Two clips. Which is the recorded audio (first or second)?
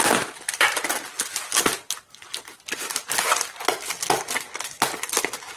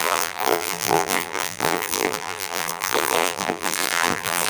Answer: first